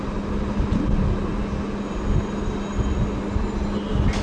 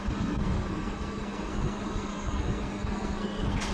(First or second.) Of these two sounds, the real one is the first